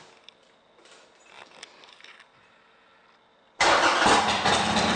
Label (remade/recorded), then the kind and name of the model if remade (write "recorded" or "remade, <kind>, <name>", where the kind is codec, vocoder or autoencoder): recorded